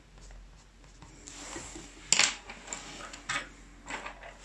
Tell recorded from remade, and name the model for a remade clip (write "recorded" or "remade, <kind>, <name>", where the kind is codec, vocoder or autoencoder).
recorded